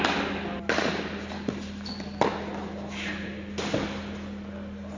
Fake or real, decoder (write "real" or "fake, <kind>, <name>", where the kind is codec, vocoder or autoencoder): real